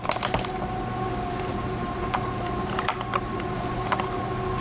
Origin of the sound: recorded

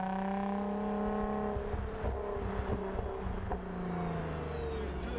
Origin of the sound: recorded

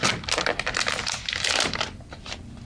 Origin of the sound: recorded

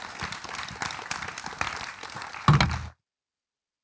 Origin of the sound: recorded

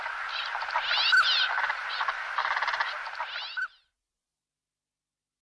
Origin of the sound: recorded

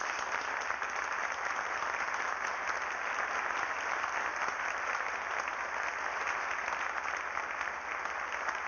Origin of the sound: recorded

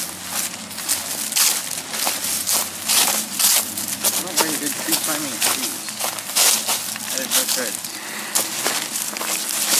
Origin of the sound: recorded